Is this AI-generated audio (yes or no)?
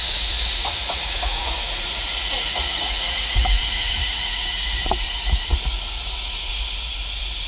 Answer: yes